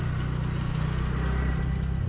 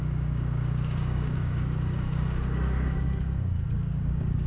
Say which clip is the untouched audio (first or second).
first